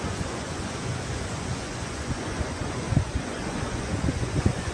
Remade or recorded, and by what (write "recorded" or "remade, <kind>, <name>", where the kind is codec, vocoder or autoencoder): remade, vocoder, Vocos